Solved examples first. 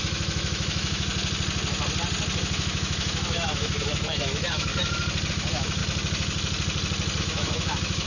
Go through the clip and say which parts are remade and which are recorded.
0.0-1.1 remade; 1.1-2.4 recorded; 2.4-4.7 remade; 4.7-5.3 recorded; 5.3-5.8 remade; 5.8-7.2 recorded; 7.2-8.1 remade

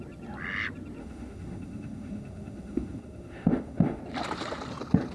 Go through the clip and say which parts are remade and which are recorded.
0.0-1.0 recorded; 1.0-4.0 remade; 4.0-5.1 recorded

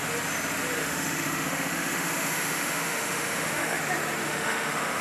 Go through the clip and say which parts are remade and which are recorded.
0.0-0.8 recorded; 0.8-3.8 remade; 3.8-4.2 recorded; 4.2-5.0 remade

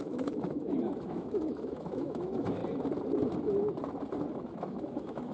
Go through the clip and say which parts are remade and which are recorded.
0.0-2.6 remade; 2.6-4.6 recorded; 4.6-5.3 remade